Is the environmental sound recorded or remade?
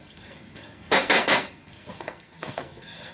remade